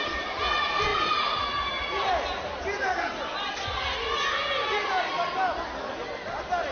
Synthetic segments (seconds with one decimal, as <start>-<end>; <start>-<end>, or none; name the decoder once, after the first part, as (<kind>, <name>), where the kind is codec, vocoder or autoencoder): 0.9-3.5 (vocoder, BigVGAN v2)